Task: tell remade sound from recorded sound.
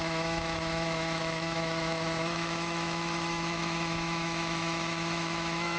remade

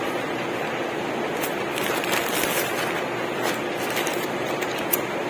recorded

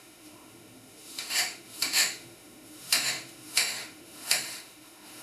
remade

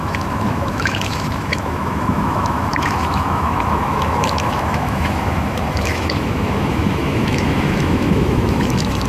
remade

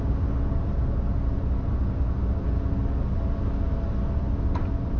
recorded